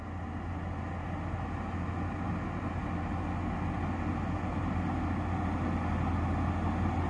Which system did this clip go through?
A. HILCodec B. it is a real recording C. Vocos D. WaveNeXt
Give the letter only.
B